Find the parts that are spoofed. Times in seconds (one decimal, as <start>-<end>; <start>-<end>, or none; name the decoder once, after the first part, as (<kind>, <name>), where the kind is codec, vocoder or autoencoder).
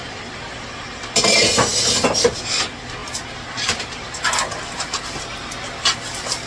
0.0-0.7 (vocoder, BigVGAN v2)